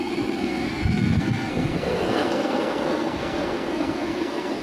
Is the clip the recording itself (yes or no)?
no